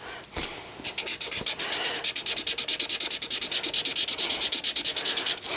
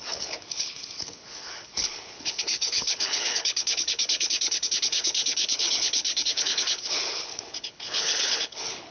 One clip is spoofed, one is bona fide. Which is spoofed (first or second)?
second